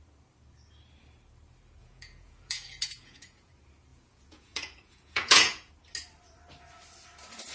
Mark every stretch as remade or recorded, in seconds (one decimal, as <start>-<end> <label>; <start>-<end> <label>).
0.0-1.8 recorded; 1.8-3.5 remade; 3.5-3.9 recorded; 3.9-5.7 remade; 5.7-7.5 recorded